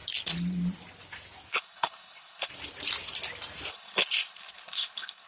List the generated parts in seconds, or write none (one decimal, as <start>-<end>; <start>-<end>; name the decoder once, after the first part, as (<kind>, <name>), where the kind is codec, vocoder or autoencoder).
1.5-2.5 (codec, HILCodec); 3.7-5.3